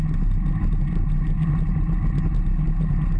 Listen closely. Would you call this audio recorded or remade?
recorded